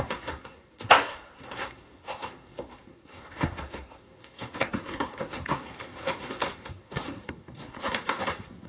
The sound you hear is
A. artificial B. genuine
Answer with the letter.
A